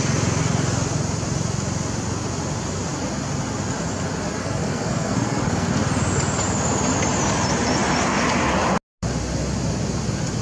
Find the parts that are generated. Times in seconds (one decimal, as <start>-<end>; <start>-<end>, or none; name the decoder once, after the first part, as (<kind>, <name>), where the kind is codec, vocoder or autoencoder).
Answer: 4.4-5.7 (codec, SNAC)